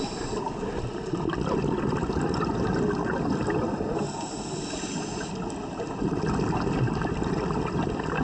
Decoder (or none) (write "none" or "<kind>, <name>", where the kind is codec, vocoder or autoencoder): none